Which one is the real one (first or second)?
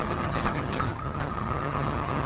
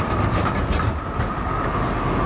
second